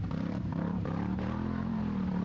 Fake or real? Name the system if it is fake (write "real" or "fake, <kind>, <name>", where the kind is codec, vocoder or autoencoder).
fake, vocoder, BigVGAN v2